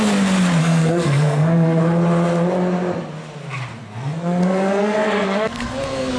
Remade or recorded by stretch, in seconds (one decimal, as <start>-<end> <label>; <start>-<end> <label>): 0.0-0.6 recorded; 0.6-1.8 remade; 1.8-3.8 recorded; 3.8-6.2 remade